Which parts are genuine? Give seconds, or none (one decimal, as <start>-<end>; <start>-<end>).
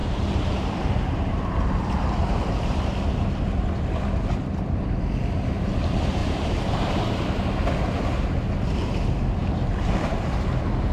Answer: 2.9-6.2; 7.2-9.4; 10.4-10.9